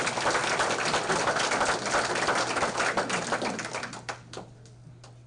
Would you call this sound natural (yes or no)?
yes